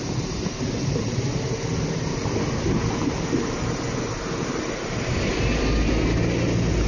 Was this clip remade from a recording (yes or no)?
no